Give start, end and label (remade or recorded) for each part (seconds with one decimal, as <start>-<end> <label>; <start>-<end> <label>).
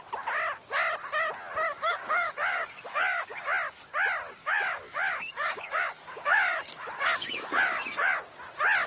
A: 0.0-1.7 recorded; 1.7-3.5 remade; 3.5-4.4 recorded; 4.4-8.2 remade; 8.2-8.9 recorded